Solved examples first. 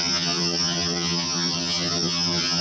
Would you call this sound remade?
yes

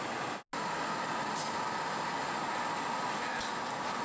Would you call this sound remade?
no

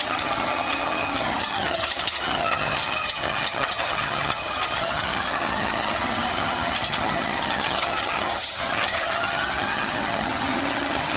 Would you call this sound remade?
yes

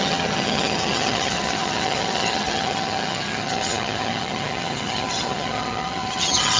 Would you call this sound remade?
yes